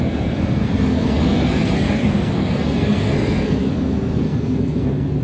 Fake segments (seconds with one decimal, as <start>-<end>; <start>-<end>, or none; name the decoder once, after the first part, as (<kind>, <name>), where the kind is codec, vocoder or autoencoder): 0.0-5.2 (codec, SNAC)